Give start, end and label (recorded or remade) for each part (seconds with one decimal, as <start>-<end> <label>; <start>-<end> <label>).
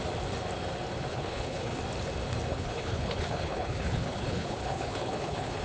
0.0-1.1 recorded; 1.1-1.8 remade; 1.8-2.5 recorded; 2.5-5.6 remade